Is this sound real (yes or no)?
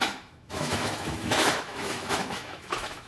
no